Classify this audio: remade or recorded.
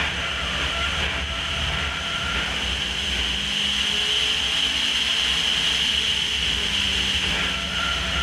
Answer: recorded